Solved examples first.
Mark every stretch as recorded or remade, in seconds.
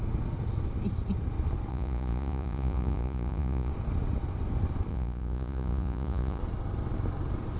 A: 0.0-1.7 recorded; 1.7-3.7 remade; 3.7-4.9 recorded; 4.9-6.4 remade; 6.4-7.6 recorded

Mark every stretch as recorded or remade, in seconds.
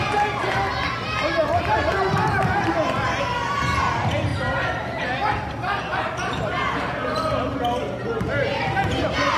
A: 0.0-0.4 recorded; 0.4-2.8 remade; 2.8-4.3 recorded; 4.3-8.6 remade; 8.6-9.4 recorded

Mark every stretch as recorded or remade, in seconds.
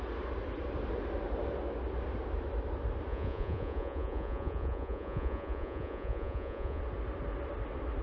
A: 0.0-3.1 recorded; 3.1-6.8 remade; 6.8-8.0 recorded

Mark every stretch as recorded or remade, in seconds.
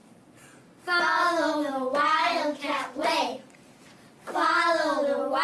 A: 0.0-1.0 remade; 1.0-2.2 recorded; 2.2-5.4 remade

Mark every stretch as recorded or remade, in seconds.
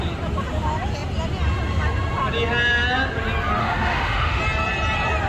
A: 0.0-3.6 recorded; 3.6-4.4 remade; 4.4-5.3 recorded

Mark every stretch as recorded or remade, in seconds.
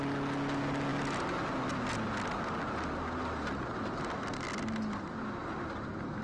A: 0.0-6.2 recorded